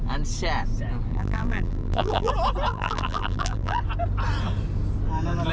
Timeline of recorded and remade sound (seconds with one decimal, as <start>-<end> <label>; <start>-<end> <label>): 0.0-1.1 recorded; 1.1-2.3 remade; 2.3-2.7 recorded; 2.7-3.8 remade; 3.8-5.5 recorded